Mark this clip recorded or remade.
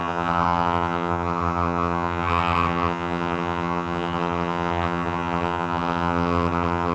remade